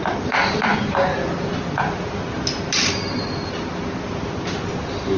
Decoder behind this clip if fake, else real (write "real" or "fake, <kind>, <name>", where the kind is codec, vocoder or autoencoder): real